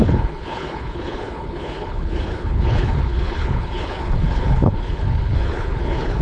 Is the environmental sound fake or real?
fake